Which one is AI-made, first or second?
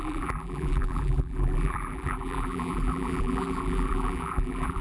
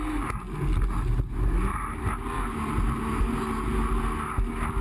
first